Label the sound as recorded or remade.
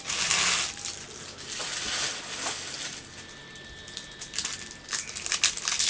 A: recorded